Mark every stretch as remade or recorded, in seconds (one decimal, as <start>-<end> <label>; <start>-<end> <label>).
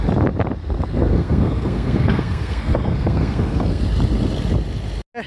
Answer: 0.0-0.6 recorded; 0.6-3.8 remade; 3.8-5.3 recorded